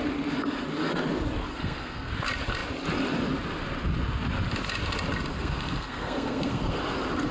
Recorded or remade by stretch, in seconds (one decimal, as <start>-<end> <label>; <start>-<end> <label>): 0.0-1.5 recorded; 1.5-2.1 remade; 2.1-5.3 recorded; 5.3-6.8 remade; 6.8-7.3 recorded